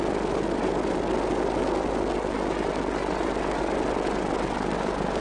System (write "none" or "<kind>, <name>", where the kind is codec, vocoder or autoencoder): none